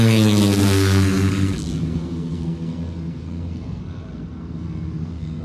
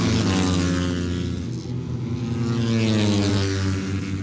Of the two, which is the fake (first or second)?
first